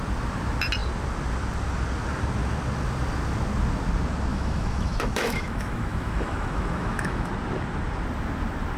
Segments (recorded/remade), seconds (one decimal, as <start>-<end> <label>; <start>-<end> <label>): 0.0-4.3 recorded; 4.3-7.3 remade; 7.3-8.8 recorded